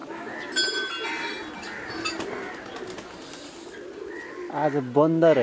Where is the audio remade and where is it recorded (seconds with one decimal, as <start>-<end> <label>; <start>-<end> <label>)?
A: 0.0-5.4 recorded